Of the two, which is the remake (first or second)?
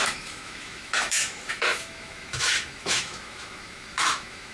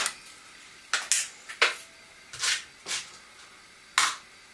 first